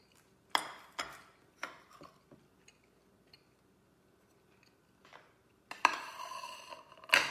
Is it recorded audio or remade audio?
recorded